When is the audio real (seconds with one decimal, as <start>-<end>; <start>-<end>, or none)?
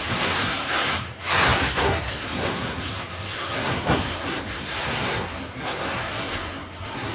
none